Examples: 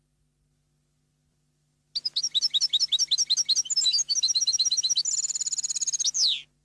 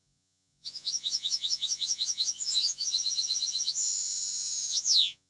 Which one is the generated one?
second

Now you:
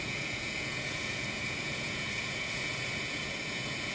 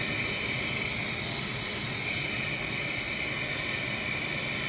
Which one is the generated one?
first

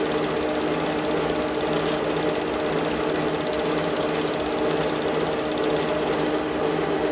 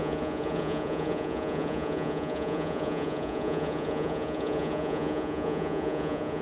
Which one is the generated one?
second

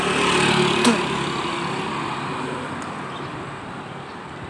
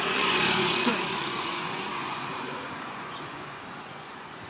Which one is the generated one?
second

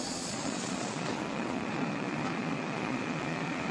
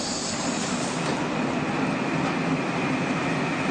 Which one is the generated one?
first